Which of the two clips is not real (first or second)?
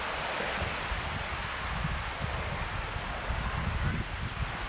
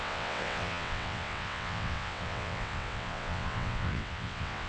second